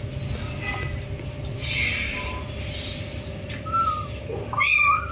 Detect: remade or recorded recorded